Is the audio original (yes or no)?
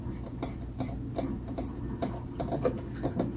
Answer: yes